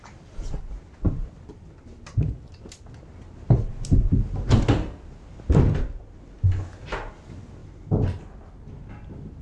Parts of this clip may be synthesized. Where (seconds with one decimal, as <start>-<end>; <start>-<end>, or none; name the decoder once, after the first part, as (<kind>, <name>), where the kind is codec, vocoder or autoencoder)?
none